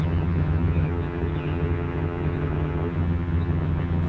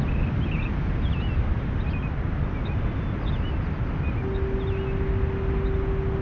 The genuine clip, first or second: second